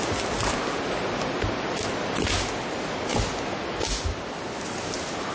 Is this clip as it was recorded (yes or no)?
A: yes